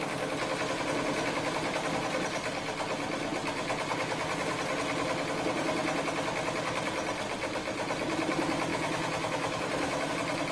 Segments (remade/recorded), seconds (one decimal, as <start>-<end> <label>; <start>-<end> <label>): 0.0-8.7 recorded; 8.7-10.1 remade; 10.1-10.5 recorded